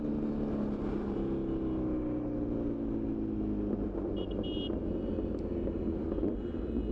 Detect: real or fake real